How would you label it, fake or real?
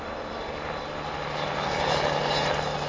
real